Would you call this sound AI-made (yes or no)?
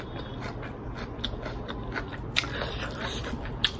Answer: yes